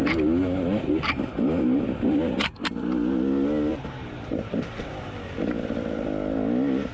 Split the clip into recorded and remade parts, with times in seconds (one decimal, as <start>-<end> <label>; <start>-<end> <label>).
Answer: 0.0-3.7 recorded; 3.7-4.9 remade; 4.9-6.9 recorded